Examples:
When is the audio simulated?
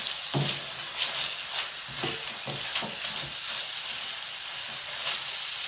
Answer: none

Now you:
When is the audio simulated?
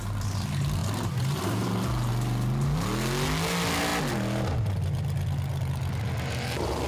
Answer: none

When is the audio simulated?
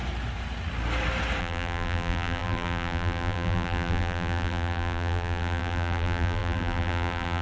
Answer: 1.4-7.4 (vocoder, BigVGAN v2)